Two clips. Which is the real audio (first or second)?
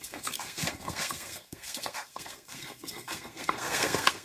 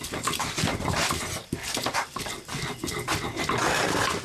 second